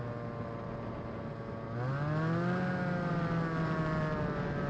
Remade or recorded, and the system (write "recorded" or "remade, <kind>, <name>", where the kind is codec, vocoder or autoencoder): recorded